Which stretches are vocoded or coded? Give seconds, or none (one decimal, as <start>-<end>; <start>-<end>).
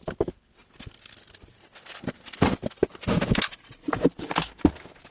none